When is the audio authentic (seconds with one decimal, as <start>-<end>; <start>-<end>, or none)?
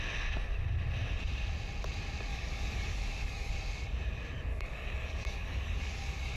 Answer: 0.0-2.3; 3.5-4.5